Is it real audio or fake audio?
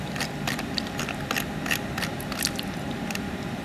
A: fake